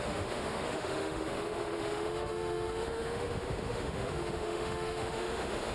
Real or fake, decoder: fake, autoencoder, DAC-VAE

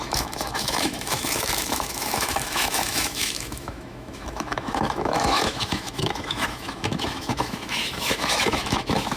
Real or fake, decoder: fake, autoencoder, DAC-VAE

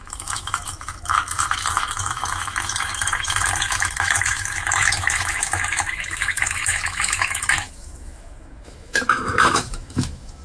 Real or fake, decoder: fake, autoencoder, DAC-VAE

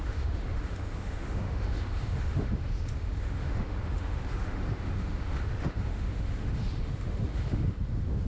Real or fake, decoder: fake, autoencoder, DAC-VAE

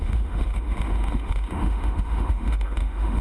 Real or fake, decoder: fake, autoencoder, DAC-VAE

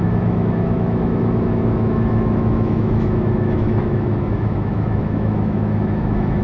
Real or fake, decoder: fake, autoencoder, DAC-VAE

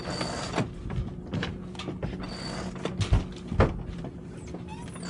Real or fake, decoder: real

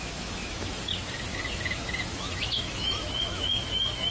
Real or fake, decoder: fake, autoencoder, DAC-VAE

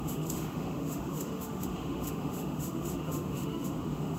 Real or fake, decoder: fake, autoencoder, DAC-VAE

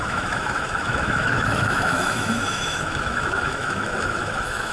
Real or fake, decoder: fake, autoencoder, DAC-VAE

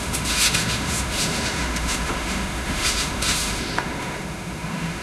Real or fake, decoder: fake, autoencoder, DAC-VAE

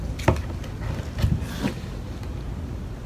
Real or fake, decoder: real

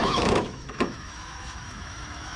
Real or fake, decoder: fake, autoencoder, DAC-VAE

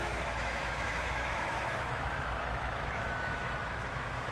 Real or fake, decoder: fake, autoencoder, DAC-VAE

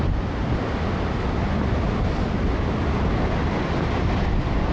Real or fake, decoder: real